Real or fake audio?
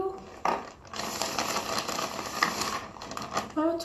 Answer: real